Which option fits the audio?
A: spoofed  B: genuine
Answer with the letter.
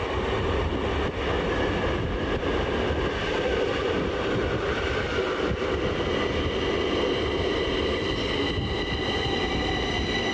B